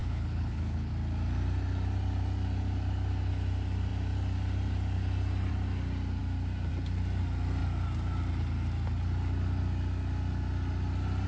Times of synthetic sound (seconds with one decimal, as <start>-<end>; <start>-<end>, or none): 0.0-0.9